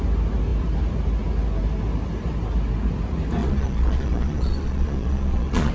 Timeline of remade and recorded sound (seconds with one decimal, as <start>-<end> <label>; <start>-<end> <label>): 0.0-3.4 recorded; 3.4-5.7 remade